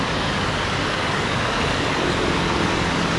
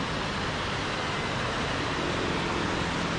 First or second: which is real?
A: second